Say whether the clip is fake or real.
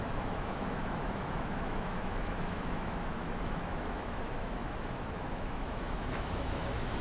fake